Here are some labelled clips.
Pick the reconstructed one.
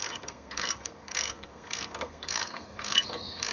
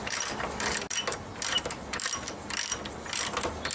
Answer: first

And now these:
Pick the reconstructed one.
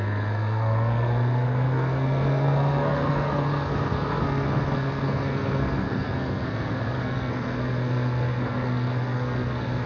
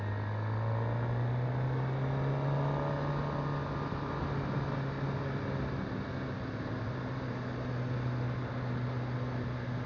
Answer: first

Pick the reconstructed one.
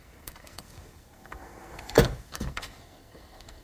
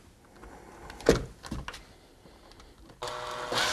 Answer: first